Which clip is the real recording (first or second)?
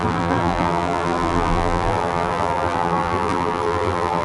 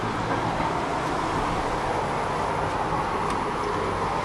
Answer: second